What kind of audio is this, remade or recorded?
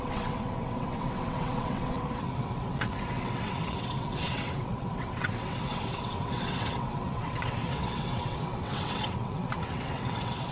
remade